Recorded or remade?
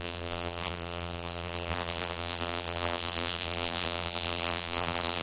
remade